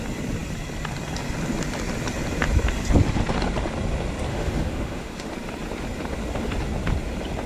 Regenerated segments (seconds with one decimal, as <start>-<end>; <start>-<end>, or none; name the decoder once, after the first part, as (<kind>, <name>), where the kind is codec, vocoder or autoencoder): 4.3-5.3 (autoencoder, DAC-VAE)